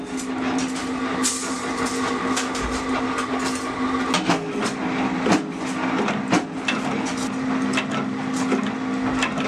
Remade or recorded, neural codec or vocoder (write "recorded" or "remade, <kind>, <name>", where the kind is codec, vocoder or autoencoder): recorded